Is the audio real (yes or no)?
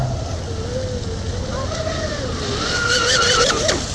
yes